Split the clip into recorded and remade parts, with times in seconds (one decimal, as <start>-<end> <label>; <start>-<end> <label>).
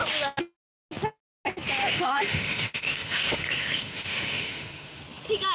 0.0-1.8 recorded; 1.8-5.0 remade; 5.0-5.5 recorded